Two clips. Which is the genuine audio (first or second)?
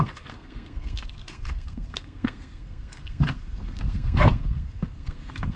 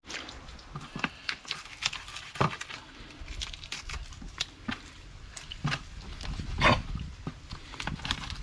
second